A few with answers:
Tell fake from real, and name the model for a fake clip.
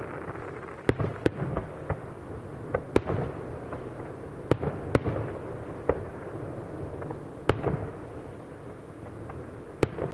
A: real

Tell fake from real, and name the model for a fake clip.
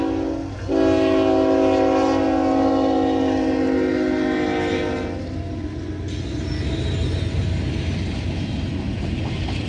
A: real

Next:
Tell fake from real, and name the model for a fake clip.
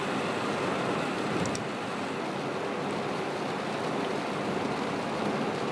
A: real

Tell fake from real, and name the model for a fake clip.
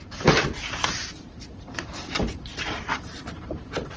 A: fake, vocoder, BigVGAN v2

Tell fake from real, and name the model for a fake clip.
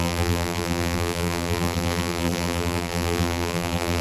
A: fake, vocoder, BigVGAN v2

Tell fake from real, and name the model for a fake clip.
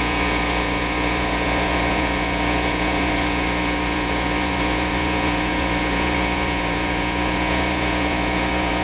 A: fake, vocoder, Vocos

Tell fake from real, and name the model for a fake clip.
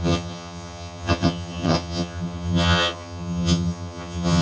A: fake, vocoder, HiFi-GAN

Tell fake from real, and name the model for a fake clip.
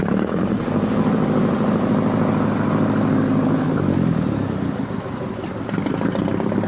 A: real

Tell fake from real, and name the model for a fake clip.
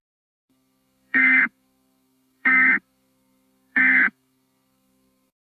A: fake, codec, SNAC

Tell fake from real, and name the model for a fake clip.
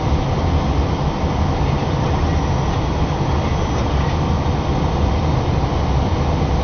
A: real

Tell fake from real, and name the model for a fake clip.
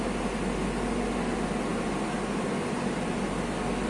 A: real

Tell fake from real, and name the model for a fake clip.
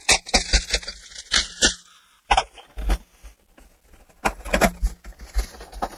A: real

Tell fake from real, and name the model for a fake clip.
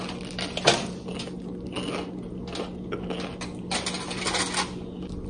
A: real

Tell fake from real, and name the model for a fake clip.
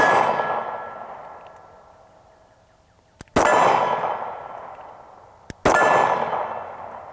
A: real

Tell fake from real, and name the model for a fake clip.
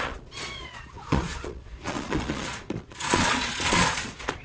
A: fake, vocoder, Vocos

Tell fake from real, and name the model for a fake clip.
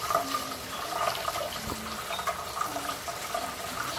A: fake, vocoder, BigVGAN v2